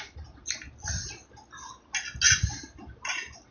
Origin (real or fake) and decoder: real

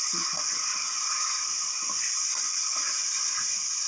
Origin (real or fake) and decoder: real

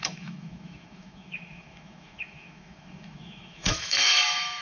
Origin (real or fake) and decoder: fake, autoencoder, DAC-VAE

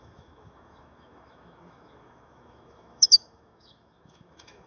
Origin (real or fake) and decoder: fake, autoencoder, DAC-VAE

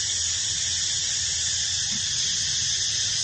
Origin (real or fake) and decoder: real